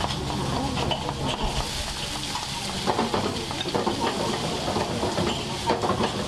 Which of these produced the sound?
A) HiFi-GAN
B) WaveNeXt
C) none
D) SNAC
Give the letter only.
C